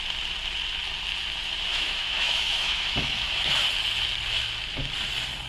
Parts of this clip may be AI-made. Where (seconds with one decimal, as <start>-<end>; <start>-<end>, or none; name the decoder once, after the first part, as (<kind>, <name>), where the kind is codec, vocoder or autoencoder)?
1.7-3.5 (autoencoder, DAC-VAE)